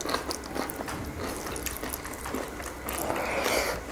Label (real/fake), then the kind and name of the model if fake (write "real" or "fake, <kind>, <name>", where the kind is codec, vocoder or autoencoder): real